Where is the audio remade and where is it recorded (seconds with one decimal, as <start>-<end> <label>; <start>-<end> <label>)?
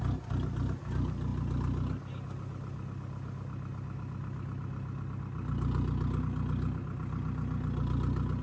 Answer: 0.0-8.4 recorded